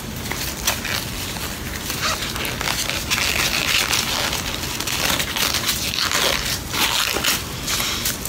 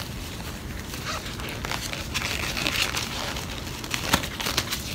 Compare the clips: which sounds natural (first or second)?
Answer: first